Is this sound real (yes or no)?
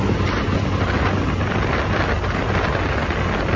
yes